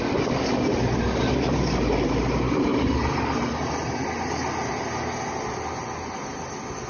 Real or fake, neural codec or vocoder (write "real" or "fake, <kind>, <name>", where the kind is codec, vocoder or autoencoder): real